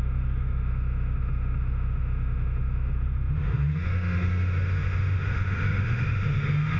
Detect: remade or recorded remade